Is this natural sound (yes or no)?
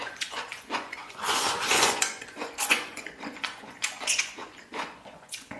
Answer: no